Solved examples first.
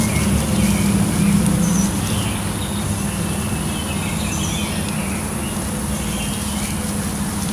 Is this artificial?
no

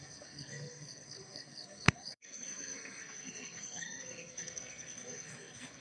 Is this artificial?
yes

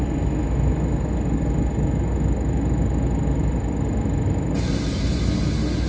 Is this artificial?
no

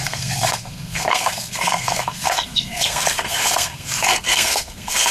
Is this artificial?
yes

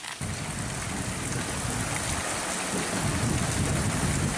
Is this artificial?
no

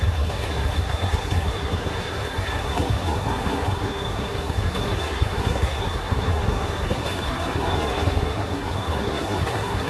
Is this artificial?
yes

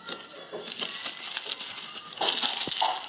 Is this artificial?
no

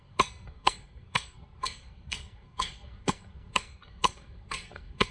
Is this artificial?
yes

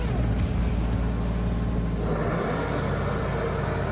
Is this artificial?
no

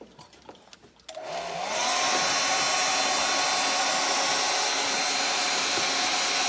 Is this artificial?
no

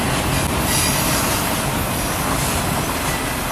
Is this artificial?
no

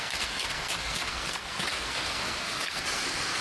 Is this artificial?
yes